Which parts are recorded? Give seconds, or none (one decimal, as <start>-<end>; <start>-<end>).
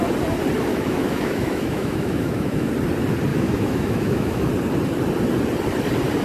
0.0-0.7; 2.7-3.3; 4.5-6.2